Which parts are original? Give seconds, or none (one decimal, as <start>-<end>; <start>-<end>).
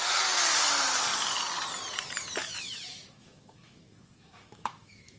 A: 0.0-2.4